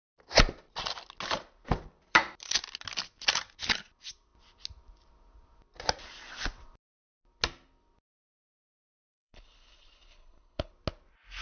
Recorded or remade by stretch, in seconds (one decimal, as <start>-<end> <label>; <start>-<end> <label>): 0.0-9.1 recorded; 9.1-10.7 remade; 10.7-11.4 recorded